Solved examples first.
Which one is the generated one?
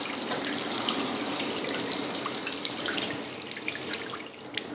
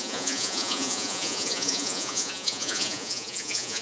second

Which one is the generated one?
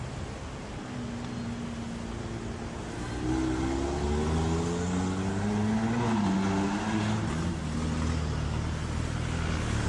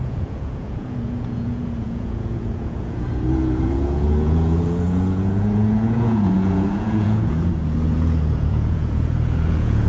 second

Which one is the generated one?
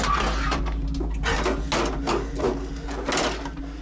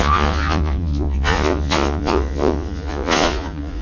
second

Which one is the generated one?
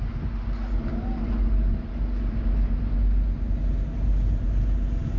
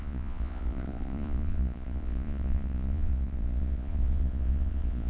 second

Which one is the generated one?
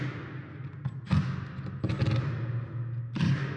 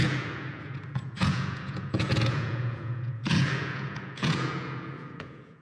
second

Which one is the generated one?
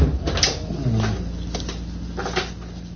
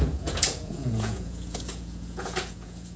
second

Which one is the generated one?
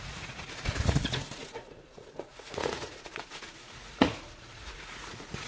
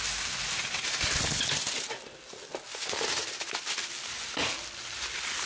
first